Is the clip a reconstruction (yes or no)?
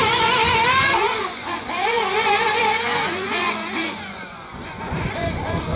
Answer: yes